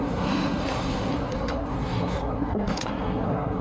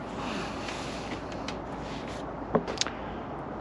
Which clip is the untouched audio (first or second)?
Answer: second